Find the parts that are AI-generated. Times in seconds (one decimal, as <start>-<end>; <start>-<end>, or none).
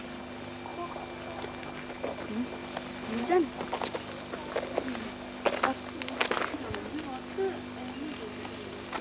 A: 2.6-3.3